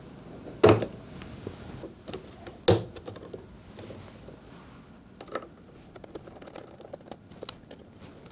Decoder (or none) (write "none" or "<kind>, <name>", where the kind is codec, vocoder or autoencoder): none